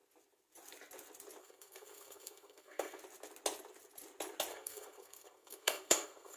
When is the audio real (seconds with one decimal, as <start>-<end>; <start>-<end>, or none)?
0.0-1.4; 3.0-4.5